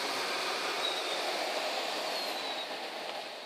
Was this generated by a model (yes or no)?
no